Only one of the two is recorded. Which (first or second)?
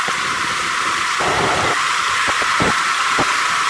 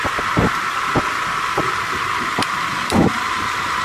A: second